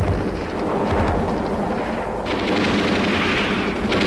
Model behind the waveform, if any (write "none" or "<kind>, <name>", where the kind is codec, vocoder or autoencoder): none